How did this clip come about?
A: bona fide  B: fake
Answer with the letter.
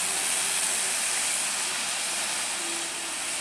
A